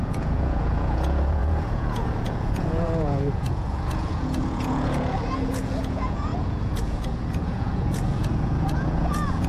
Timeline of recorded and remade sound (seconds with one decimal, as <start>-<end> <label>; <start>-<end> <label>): 0.0-9.5 remade